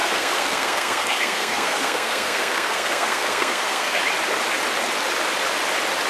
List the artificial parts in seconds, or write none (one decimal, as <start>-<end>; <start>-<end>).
0.0-4.0